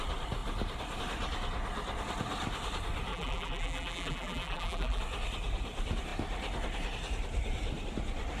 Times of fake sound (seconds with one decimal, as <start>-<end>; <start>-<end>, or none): 3.1-5.0